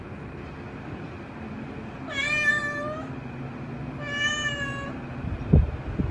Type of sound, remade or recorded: recorded